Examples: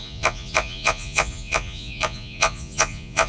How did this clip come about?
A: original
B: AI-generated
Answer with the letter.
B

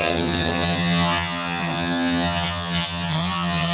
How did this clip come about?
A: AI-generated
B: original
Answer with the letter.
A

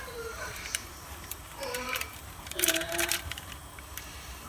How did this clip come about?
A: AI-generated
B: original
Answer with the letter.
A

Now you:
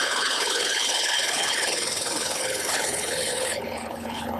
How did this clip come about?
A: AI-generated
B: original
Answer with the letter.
A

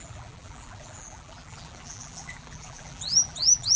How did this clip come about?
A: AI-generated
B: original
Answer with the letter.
A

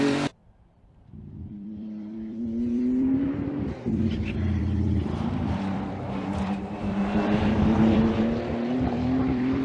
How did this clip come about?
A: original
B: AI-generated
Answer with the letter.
B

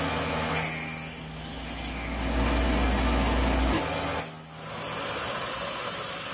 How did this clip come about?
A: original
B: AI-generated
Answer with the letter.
A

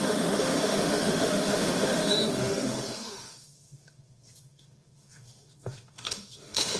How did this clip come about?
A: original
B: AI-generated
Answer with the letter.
B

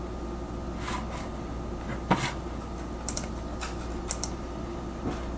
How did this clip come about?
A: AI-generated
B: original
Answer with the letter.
B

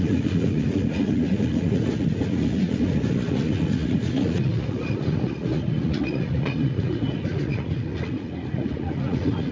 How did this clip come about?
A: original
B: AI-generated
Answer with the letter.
B